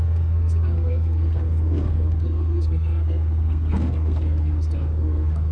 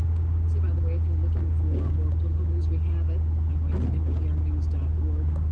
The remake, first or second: first